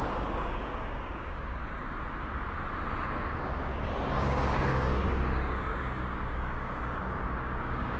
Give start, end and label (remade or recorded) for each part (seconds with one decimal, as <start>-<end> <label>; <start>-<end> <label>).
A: 0.0-1.6 remade; 1.6-3.3 recorded; 3.3-3.7 remade; 3.7-4.2 recorded; 4.2-8.0 remade